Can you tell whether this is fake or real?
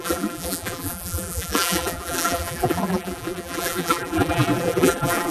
fake